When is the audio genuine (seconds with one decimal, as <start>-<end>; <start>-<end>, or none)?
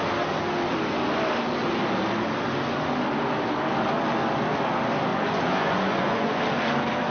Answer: 0.0-5.1; 6.4-7.1